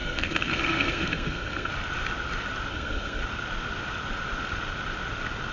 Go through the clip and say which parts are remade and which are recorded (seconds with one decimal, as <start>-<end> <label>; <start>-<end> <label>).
0.0-1.7 remade; 1.7-2.7 recorded; 2.7-3.2 remade; 3.2-5.5 recorded